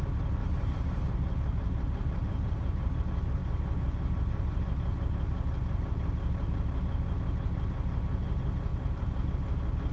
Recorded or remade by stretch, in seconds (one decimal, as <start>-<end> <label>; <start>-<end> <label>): 0.0-0.4 recorded; 0.4-3.0 remade; 3.0-8.7 recorded; 8.7-9.3 remade; 9.3-9.9 recorded